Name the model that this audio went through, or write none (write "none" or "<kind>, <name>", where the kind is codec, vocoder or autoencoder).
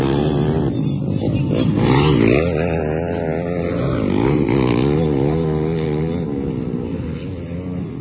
none